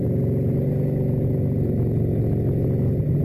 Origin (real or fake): real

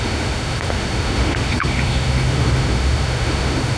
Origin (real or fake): fake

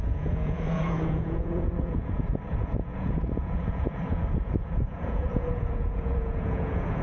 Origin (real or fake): fake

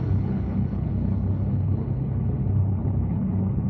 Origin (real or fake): fake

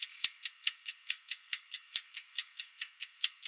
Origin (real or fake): fake